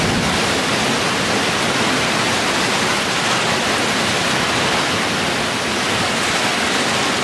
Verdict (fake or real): real